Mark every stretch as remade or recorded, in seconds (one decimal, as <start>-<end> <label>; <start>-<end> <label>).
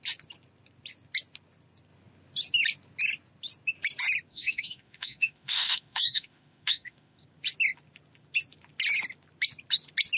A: 0.0-4.3 recorded; 4.3-7.2 remade; 7.2-10.2 recorded